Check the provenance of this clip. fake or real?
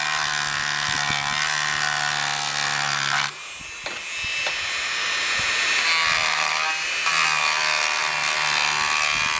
real